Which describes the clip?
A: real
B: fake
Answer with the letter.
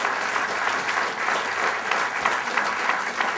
A